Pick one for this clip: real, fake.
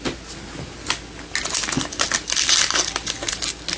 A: real